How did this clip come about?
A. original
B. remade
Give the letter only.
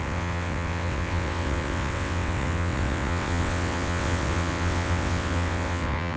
B